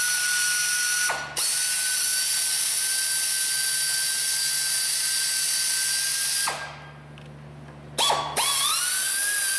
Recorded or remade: recorded